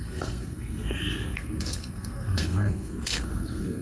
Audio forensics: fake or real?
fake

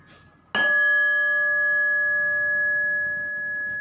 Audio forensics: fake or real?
real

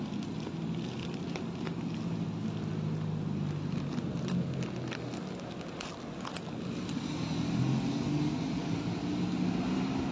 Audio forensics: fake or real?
real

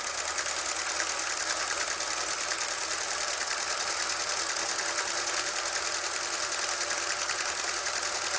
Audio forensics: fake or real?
real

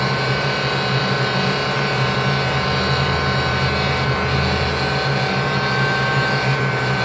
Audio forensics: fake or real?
real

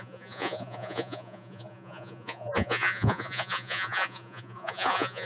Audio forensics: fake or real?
fake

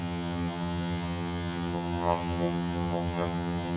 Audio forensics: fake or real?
fake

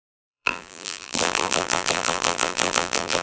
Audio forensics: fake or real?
fake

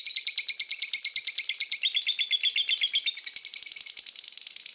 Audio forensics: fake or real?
real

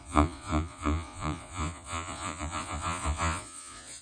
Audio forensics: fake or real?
fake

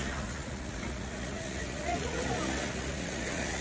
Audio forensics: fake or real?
fake